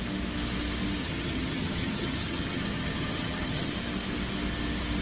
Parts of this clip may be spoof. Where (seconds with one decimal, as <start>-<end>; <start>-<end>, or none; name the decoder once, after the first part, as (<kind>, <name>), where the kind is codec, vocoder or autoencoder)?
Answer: 1.0-3.7 (vocoder, HiFi-GAN)